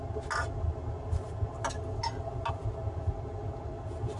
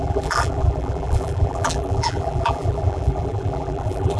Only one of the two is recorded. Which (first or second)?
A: first